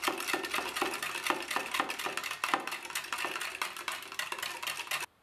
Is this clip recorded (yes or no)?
yes